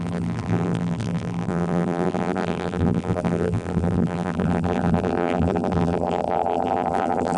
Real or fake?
fake